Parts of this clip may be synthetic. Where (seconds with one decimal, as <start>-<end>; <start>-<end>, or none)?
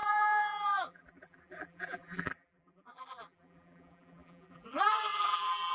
0.0-5.7